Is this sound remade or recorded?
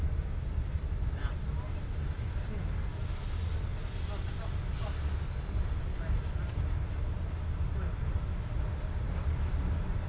recorded